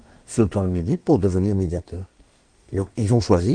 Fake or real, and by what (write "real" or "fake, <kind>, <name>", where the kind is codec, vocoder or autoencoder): fake, codec, SNAC